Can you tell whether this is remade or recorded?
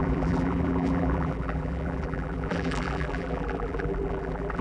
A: remade